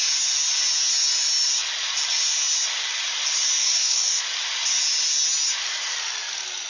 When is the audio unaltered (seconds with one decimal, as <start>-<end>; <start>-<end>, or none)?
0.0-3.6; 4.2-6.7